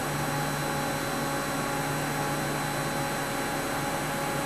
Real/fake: real